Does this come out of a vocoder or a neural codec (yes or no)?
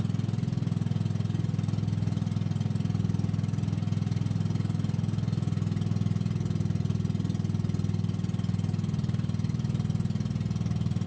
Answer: no